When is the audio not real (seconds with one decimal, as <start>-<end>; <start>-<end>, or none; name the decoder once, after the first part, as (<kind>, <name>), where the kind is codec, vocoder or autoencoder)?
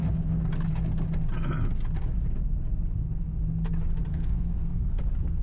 4.1-5.0 (codec, SNAC)